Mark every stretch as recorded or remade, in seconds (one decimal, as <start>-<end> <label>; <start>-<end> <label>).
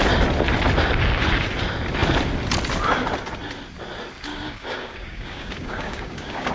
0.0-4.3 recorded; 4.3-6.5 remade